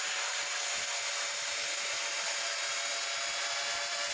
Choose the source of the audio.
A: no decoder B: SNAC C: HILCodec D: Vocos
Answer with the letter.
A